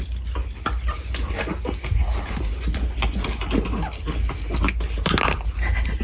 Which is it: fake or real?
real